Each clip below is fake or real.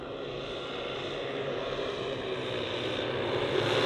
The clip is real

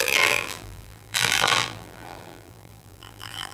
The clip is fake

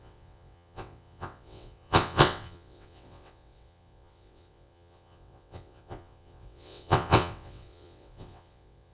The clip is fake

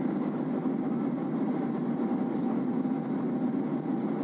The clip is real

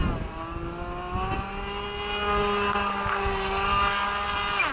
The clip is real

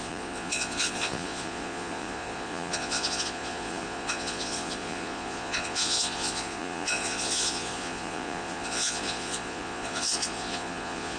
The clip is fake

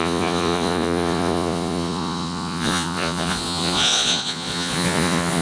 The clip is fake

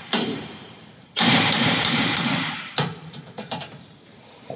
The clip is fake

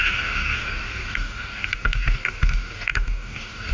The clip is fake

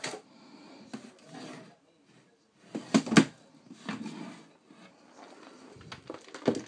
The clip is real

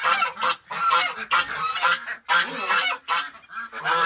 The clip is fake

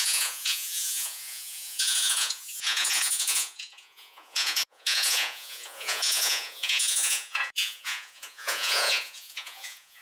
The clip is fake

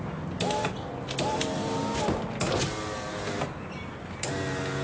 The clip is real